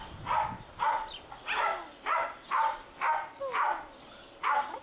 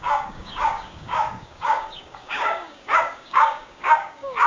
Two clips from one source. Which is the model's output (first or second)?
second